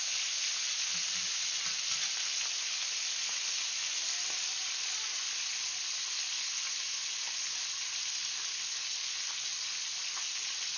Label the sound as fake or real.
real